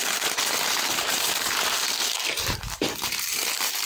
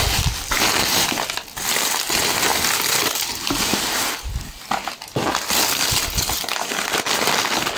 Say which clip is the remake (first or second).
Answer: first